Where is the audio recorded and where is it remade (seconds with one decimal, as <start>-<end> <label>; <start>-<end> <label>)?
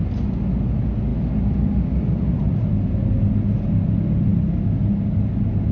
0.0-5.7 recorded